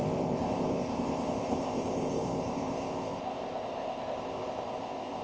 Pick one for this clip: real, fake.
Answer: fake